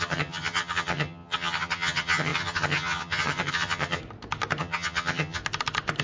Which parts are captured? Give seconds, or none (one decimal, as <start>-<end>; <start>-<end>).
4.0-4.6; 5.4-6.0